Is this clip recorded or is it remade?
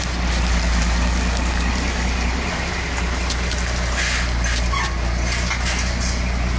recorded